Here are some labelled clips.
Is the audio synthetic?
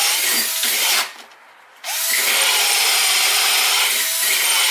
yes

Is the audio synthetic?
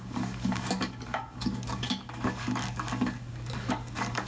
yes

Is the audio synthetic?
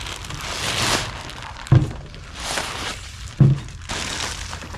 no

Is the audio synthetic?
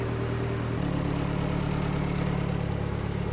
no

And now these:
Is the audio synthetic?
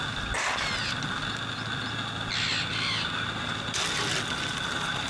no